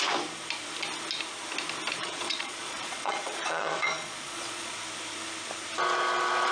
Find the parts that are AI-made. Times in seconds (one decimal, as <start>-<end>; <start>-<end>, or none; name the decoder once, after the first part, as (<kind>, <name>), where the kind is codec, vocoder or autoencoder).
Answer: 2.0-4.7 (vocoder, Vocos)